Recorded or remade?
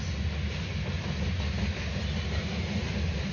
recorded